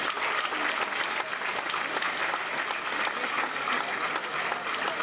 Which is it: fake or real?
real